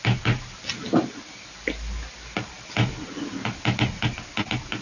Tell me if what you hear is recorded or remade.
recorded